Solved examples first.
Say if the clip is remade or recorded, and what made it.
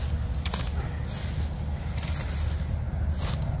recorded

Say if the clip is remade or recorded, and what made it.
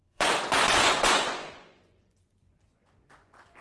remade, vocoder, Vocos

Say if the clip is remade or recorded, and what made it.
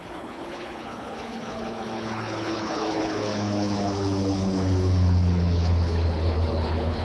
remade, codec, HILCodec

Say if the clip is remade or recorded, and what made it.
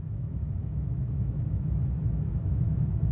remade, autoencoder, DAC-VAE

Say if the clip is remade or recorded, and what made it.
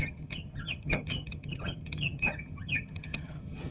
remade, vocoder, HiFi-GAN